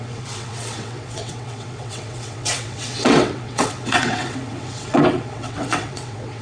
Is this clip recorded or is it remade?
remade